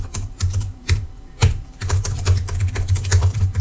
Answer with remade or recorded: remade